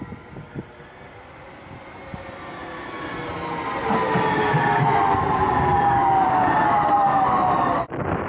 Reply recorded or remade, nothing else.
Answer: recorded